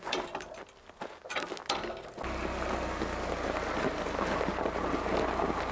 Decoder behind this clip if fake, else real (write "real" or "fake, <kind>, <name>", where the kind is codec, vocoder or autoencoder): real